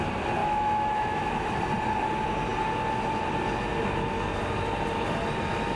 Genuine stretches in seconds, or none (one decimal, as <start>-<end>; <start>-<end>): 0.0-0.4; 1.6-5.8